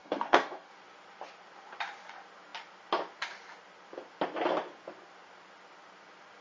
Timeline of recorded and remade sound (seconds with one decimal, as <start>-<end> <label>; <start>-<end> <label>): 0.0-0.7 remade; 0.7-6.4 recorded